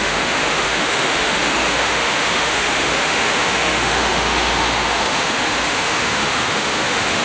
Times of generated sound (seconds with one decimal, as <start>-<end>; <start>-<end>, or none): 0.0-7.2